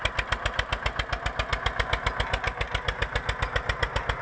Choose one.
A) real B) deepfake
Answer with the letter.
A